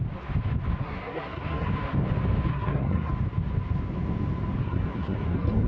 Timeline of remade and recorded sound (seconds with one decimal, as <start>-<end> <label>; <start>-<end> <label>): 0.0-0.8 recorded; 0.8-1.7 remade; 1.7-2.5 recorded; 2.5-3.1 remade; 3.1-4.6 recorded; 4.6-5.7 remade